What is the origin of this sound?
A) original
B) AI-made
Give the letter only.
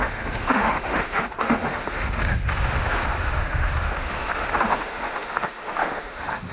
B